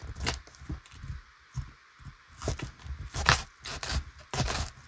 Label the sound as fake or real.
real